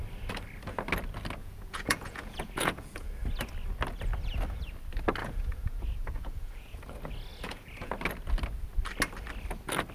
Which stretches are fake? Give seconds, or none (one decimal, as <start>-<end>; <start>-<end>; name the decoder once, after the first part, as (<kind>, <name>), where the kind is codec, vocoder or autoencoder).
1.4-3.1 (vocoder, Vocos); 5.2-6.8; 7.3-7.9